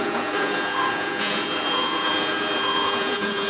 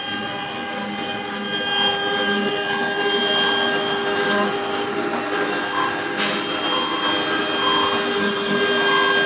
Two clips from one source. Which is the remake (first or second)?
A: first